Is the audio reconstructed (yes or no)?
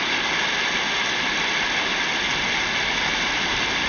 no